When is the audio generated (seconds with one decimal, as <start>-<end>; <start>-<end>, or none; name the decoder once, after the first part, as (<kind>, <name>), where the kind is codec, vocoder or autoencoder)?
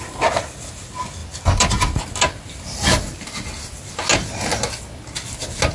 none